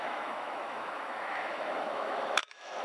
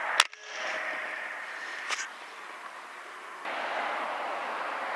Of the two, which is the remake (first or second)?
first